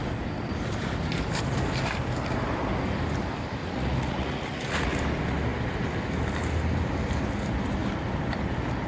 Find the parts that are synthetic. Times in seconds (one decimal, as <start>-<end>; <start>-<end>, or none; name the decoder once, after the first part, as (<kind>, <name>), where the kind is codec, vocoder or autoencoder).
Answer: 3.6-5.0 (vocoder, Vocos)